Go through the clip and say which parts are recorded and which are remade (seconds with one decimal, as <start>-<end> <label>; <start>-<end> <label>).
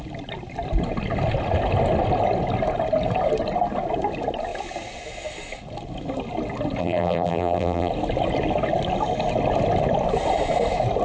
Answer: 0.0-6.8 recorded; 6.8-7.9 remade; 7.9-11.0 recorded